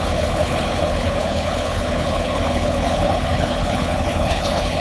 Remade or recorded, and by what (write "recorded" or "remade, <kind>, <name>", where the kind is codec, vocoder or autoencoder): remade, codec, HILCodec